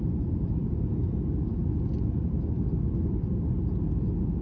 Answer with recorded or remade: recorded